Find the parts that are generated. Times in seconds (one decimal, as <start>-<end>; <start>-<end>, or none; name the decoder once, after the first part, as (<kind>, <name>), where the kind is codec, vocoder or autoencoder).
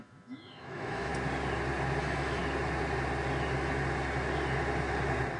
0.0-1.1 (autoencoder, DAC-VAE); 2.0-2.4